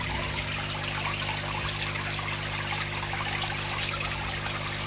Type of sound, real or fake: real